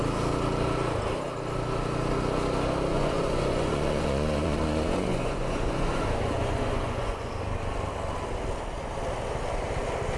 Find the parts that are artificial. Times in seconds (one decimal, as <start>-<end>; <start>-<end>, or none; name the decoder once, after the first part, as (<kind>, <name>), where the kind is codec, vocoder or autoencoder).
2.9-7.3 (vocoder, Vocos)